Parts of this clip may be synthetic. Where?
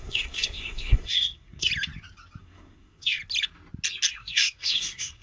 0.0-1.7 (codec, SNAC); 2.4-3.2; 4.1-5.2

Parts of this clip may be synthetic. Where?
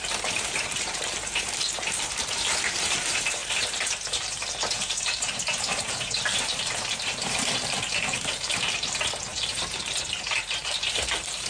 0.0-11.5 (vocoder, BigVGAN v2)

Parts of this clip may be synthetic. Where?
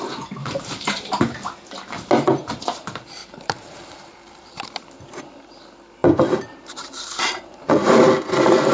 0.4-1.2 (vocoder, BigVGAN v2); 3.2-4.5; 6.0-7.6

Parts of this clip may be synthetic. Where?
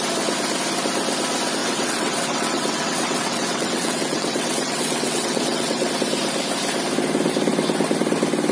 1.6-5.9 (vocoder, WaveNeXt)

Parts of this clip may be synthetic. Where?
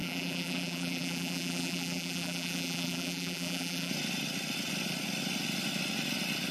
0.0-3.9 (vocoder, BigVGAN v2)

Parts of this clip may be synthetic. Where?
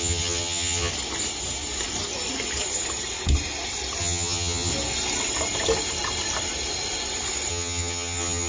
0.0-0.9 (vocoder, HiFi-GAN); 4.0-4.7; 7.5-8.5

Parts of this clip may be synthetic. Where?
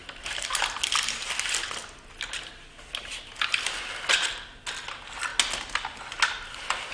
none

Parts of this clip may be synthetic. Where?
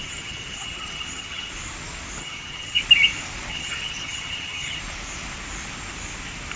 0.0-1.5 (vocoder, HiFi-GAN); 2.2-2.8; 3.5-4.8